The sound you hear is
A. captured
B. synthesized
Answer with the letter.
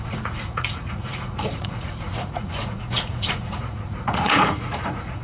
B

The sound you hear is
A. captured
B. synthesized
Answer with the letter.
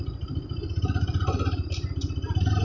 A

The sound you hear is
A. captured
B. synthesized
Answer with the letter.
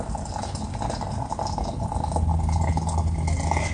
A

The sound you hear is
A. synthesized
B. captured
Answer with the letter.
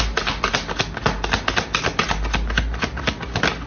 B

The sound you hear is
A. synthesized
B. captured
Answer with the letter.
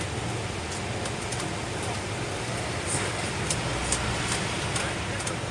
B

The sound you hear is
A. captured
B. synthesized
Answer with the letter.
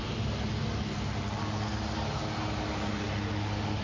A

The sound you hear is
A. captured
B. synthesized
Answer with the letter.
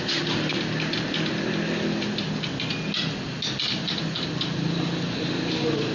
A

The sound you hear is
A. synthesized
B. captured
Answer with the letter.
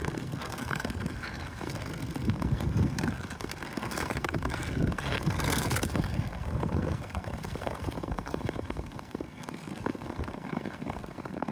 A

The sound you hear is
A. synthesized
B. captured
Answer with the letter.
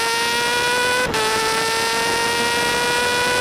B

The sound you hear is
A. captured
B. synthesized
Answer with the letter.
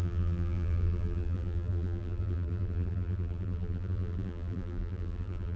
B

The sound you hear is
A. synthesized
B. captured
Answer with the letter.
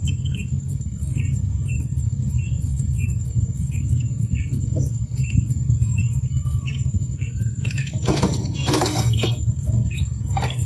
A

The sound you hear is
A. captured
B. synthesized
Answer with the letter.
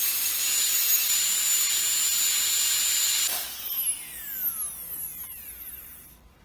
A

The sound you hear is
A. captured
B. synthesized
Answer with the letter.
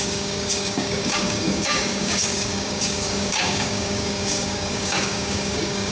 B